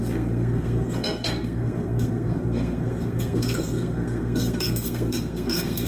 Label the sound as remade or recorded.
remade